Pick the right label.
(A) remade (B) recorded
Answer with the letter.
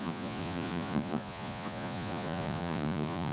A